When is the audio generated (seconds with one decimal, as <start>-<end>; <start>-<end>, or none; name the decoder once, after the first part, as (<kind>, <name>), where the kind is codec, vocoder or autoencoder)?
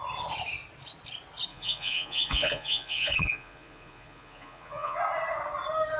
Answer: 1.5-5.0 (vocoder, Vocos)